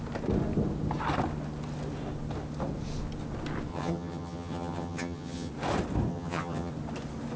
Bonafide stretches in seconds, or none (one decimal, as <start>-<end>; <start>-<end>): 0.0-3.7; 5.5-6.1; 6.7-7.4